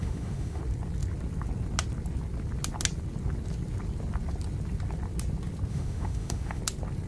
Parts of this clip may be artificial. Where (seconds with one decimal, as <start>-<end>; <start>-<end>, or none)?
0.0-0.6; 5.7-6.6